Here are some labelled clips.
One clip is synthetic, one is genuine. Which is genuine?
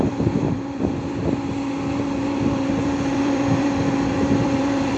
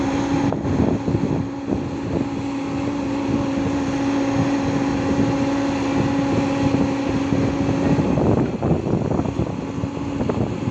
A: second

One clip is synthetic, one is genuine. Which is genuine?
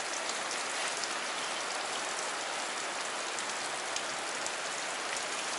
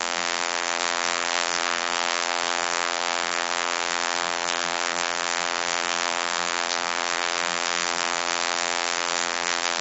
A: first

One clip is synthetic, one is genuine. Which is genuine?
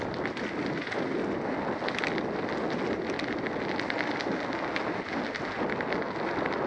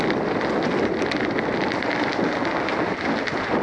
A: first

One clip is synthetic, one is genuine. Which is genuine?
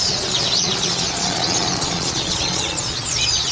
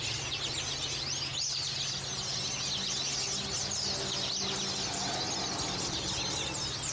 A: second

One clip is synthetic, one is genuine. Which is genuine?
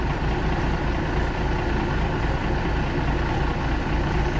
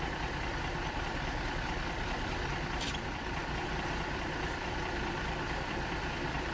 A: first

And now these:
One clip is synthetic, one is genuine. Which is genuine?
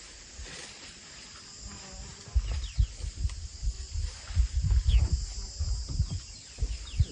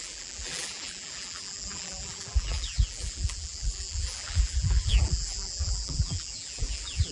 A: first